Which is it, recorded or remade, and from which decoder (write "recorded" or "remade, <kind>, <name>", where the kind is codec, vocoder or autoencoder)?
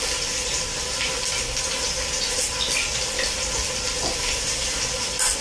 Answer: recorded